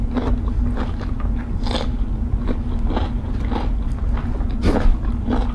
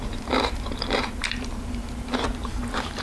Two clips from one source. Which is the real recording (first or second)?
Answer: first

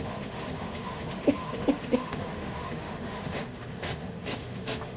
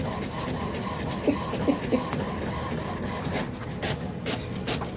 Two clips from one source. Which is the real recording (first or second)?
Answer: second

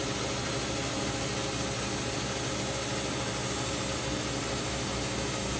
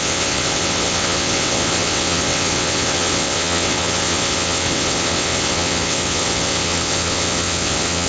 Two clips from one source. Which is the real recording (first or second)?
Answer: first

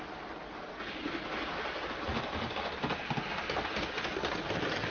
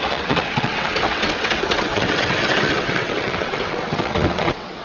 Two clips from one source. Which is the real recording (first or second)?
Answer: first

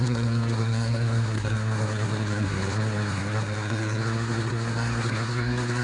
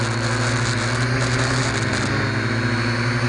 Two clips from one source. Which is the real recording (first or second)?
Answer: second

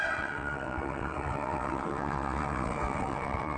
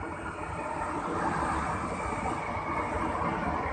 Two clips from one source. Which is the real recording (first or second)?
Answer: second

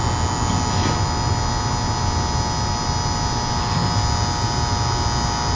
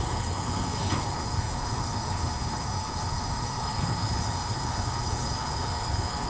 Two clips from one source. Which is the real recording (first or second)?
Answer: first